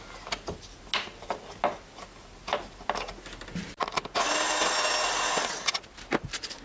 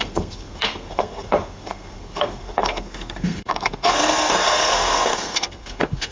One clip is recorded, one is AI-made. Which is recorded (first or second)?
first